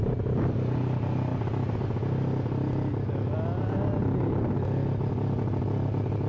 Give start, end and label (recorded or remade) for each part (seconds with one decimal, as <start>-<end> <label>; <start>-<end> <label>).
0.0-6.3 recorded